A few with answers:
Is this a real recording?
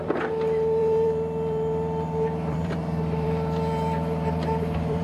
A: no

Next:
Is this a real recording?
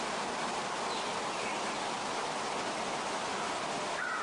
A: yes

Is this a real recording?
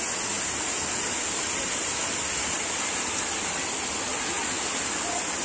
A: yes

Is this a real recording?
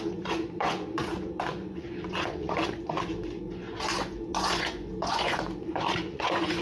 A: no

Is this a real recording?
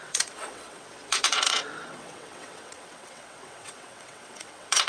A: no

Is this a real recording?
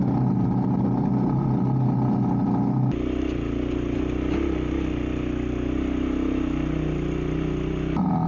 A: yes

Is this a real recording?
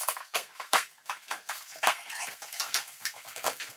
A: no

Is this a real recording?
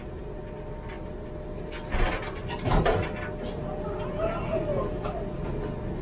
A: yes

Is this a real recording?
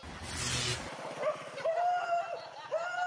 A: yes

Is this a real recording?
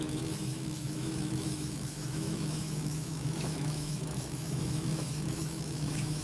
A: no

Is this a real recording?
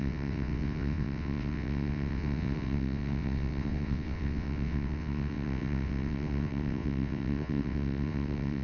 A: no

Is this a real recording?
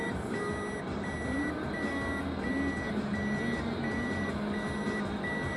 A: yes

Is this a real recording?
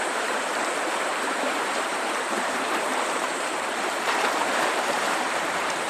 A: no